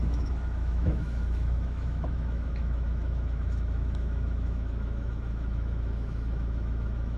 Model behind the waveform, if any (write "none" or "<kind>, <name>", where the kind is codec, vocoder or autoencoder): autoencoder, DAC-VAE